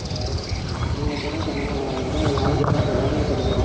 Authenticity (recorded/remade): remade